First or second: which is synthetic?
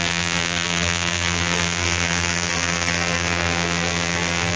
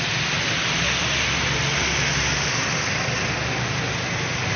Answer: first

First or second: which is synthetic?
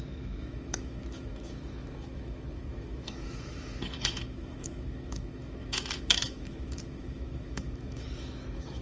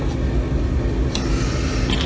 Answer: first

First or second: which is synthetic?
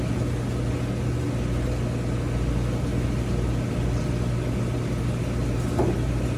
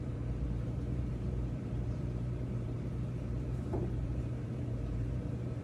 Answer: second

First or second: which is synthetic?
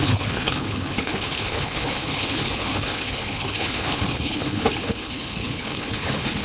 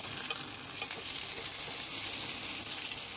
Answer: first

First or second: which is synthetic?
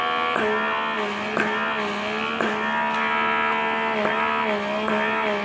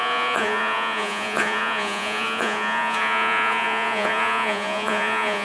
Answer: second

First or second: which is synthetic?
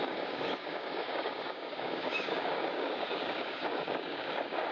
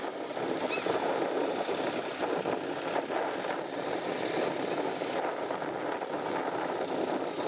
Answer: first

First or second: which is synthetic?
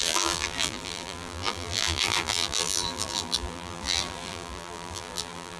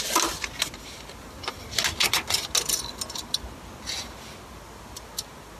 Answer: first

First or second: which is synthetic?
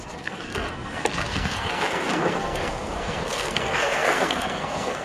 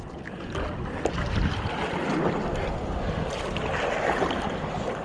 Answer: first